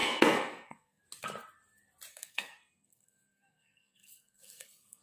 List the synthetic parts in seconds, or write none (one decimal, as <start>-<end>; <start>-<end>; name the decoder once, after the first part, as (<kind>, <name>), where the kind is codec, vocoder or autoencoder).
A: 0.0-1.0 (codec, SNAC); 2.1-5.0